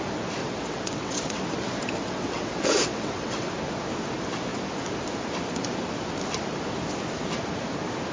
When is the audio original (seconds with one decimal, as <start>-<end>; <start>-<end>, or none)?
0.0-0.4; 1.4-2.0; 3.5-8.1